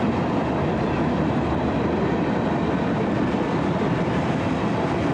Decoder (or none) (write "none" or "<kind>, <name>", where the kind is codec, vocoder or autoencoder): none